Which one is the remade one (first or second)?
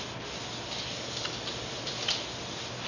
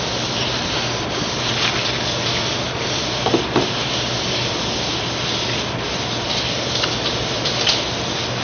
second